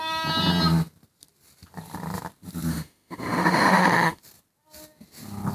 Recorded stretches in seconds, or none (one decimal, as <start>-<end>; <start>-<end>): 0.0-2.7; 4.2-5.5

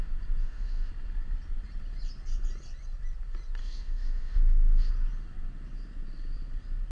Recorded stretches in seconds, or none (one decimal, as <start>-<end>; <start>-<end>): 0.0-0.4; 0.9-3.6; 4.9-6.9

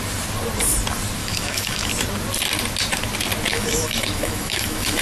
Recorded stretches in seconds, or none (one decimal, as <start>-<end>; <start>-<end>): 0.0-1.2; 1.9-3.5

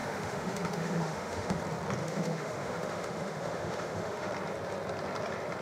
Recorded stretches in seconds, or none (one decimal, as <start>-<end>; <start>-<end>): 1.6-2.0; 4.3-5.6

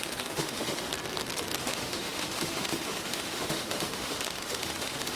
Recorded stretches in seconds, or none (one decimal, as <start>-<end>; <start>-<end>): 0.9-1.6

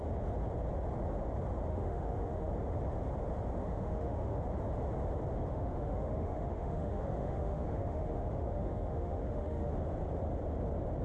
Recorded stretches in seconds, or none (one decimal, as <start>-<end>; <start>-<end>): 0.0-1.7; 2.5-3.6; 4.4-5.5; 9.7-11.0

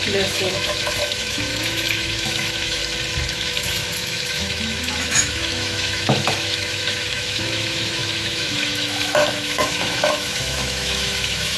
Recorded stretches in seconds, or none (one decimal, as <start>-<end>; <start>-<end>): 2.8-3.3